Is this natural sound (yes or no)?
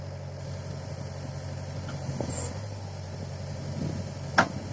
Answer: yes